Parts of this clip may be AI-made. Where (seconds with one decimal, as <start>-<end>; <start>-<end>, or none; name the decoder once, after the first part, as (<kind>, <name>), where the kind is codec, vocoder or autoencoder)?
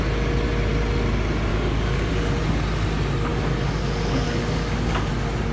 1.5-2.1 (codec, DAC); 3.3-5.1